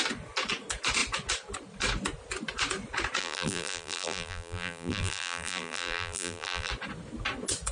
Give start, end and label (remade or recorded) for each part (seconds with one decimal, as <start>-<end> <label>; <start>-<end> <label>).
0.0-3.2 recorded; 3.2-6.7 remade; 6.7-7.7 recorded